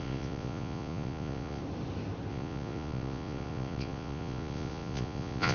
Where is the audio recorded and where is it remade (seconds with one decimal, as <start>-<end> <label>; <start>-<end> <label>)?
0.0-1.6 remade; 1.6-2.3 recorded; 2.3-5.5 remade